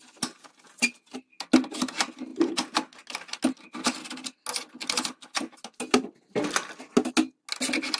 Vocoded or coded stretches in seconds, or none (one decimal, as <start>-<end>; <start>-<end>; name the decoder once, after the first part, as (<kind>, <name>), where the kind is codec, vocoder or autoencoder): none

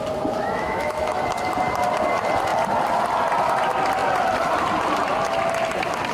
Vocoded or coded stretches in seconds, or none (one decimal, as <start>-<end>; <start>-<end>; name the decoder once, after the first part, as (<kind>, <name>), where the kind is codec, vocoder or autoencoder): 0.4-1.2 (autoencoder, DAC-VAE)

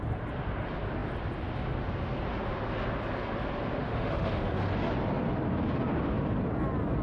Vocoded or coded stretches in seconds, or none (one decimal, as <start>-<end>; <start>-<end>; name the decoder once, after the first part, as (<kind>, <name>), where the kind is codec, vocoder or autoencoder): 3.8-4.6 (autoencoder, DAC-VAE)

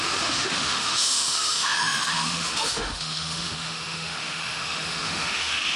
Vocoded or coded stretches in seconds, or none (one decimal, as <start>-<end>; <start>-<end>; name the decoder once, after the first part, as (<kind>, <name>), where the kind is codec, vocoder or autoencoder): 0.0-5.8 (autoencoder, DAC-VAE)

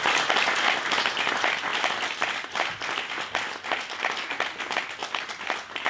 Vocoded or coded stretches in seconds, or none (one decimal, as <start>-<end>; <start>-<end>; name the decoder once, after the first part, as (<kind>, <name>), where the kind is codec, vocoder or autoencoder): none

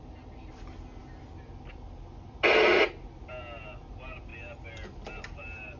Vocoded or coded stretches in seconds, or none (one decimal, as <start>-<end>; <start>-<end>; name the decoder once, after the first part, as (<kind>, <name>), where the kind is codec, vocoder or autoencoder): none

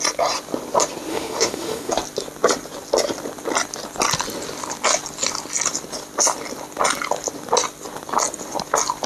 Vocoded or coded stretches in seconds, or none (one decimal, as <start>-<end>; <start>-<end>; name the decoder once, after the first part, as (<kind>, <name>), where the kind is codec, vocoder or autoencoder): 1.1-1.9 (autoencoder, DAC-VAE)

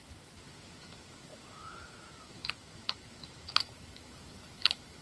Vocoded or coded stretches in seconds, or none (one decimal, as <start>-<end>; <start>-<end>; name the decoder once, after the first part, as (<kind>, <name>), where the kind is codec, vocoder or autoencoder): 0.0-5.0 (autoencoder, DAC-VAE)